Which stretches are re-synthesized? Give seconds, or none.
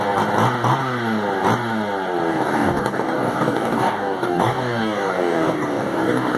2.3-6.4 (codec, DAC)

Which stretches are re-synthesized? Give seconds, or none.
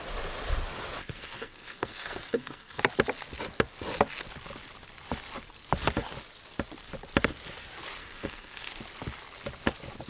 1.0-2.8 (codec, SNAC); 8.0-8.7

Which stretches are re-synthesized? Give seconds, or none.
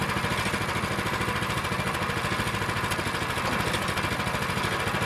none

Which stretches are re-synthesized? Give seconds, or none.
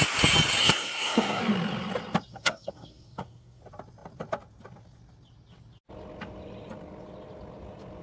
0.6-1.4 (codec, SNAC); 2.3-3.6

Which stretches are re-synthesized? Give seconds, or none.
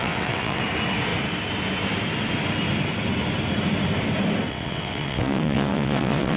0.0-0.6 (vocoder, WaveNeXt); 4.5-6.4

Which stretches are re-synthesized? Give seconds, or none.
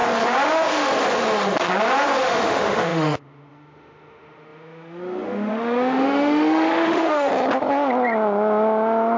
2.2-7.3 (autoencoder, DAC-VAE)